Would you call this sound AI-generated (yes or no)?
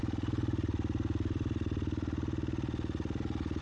no